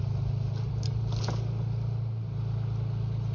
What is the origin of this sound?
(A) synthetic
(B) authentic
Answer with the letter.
B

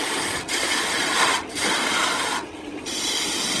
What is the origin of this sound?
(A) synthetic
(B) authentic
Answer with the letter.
B